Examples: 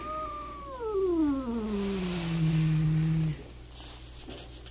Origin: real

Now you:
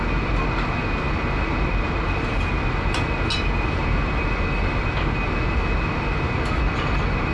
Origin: real